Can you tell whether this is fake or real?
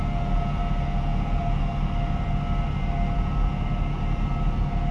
real